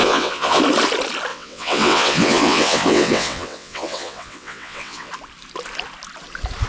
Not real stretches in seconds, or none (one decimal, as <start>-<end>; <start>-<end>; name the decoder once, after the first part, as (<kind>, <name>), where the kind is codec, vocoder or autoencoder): 0.0-0.6 (vocoder, WaveNeXt); 1.3-5.1